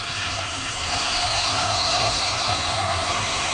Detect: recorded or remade remade